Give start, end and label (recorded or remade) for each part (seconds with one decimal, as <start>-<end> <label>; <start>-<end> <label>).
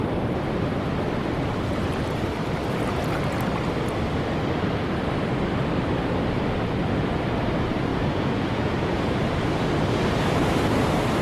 0.0-7.9 recorded; 7.9-9.1 remade; 9.1-11.2 recorded